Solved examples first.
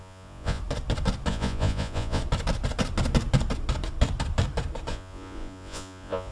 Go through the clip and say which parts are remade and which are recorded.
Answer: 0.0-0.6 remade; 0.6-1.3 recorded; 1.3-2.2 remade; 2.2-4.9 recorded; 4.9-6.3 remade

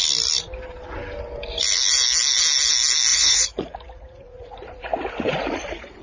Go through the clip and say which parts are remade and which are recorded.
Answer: 0.0-3.1 recorded; 3.1-6.0 remade

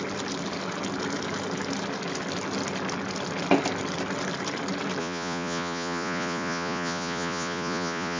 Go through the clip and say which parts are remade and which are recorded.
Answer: 0.0-5.0 recorded; 5.0-8.2 remade

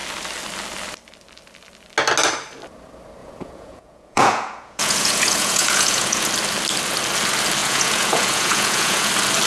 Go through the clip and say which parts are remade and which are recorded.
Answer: 0.0-3.2 recorded; 3.2-6.3 remade; 6.3-7.6 recorded; 7.6-9.1 remade; 9.1-9.5 recorded

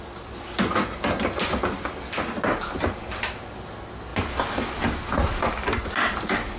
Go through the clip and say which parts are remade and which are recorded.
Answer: 0.0-6.6 recorded

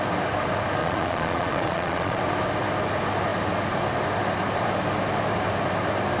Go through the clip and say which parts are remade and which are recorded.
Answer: 0.0-0.8 recorded; 0.8-2.2 remade; 2.2-6.2 recorded

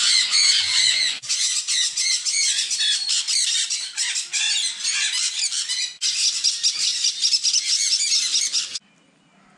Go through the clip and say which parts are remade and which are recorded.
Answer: 0.0-2.7 remade; 2.7-9.6 recorded